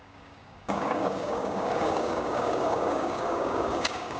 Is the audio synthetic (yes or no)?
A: yes